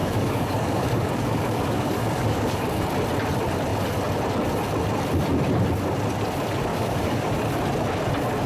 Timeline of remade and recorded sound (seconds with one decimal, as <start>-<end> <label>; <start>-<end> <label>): 0.0-2.8 remade; 2.8-6.7 recorded; 6.7-7.3 remade; 7.3-8.5 recorded